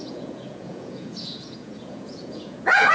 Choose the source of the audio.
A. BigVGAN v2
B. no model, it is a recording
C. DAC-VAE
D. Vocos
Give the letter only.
D